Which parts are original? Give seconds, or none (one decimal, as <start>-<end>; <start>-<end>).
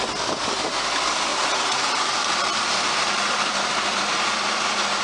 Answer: 0.0-1.3; 4.3-5.0